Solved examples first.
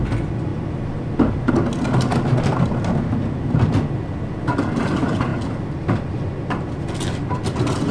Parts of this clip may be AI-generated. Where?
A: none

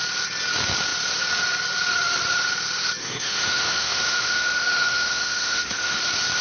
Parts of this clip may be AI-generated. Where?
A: 3.0-6.0 (autoencoder, DAC-VAE)

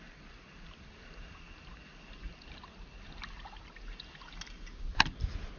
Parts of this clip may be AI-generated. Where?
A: none

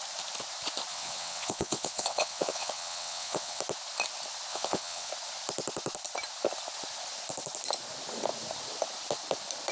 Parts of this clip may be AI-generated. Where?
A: 0.9-3.6 (vocoder, WaveNeXt); 4.5-5.1

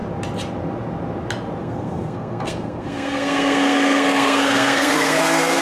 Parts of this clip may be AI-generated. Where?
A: 1.6-5.6 (codec, SNAC)